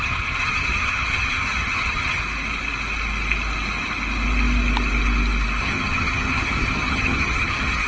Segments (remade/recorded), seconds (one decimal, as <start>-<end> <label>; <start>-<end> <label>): 0.0-2.2 remade; 2.2-5.6 recorded; 5.6-7.9 remade